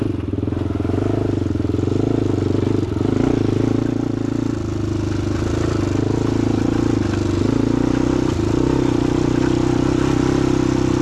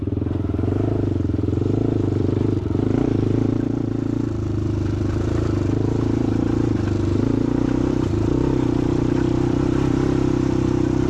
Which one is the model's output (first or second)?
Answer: second